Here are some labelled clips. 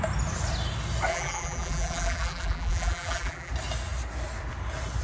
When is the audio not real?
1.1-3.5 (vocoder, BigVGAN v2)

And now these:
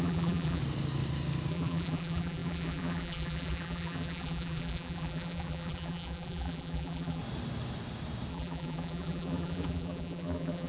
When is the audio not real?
0.0-0.6 (vocoder, BigVGAN v2); 1.5-7.2; 8.3-10.7

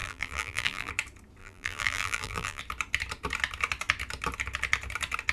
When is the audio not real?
0.0-0.9 (vocoder, BigVGAN v2); 1.4-2.6

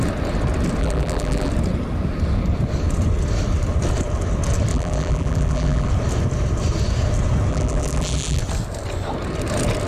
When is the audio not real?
0.8-1.5 (vocoder, BigVGAN v2); 4.7-5.9; 7.5-8.4

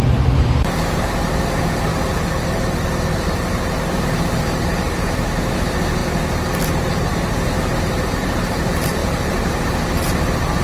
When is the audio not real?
0.0-1.9 (vocoder, BigVGAN v2); 3.7-6.0; 7.1-10.6